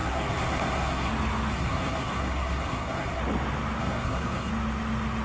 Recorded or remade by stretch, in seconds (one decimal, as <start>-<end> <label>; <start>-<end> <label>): 0.0-1.1 remade; 1.1-1.5 recorded; 1.5-3.2 remade; 3.2-3.8 recorded; 3.8-4.5 remade; 4.5-5.2 recorded